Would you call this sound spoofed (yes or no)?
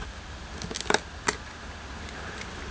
no